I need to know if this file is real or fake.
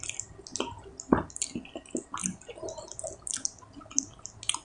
real